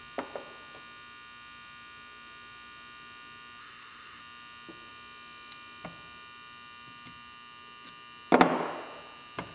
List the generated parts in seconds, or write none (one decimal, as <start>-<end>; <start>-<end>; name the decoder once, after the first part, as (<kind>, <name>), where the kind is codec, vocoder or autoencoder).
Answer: 3.6-4.2 (codec, HILCodec)